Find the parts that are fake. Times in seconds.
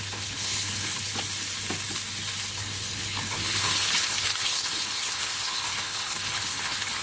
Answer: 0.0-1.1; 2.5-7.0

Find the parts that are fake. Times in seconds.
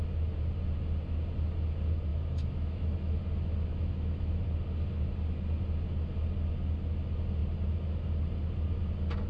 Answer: 2.1-3.2; 3.7-4.4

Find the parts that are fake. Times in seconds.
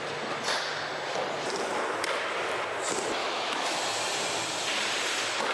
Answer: 3.2-3.8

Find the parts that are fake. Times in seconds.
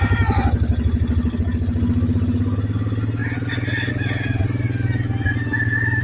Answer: none